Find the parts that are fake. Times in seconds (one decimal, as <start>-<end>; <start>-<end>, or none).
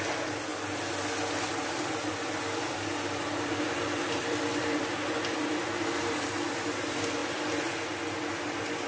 0.0-0.5; 1.5-8.9